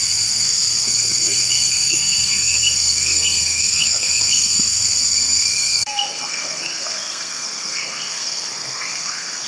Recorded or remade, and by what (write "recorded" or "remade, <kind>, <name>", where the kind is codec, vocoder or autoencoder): remade, codec, SNAC